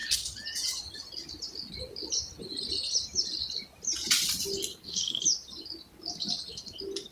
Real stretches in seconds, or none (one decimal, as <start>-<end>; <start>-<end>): 0.0-4.7; 5.2-7.1